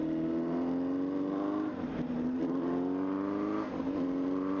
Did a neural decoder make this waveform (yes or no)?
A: no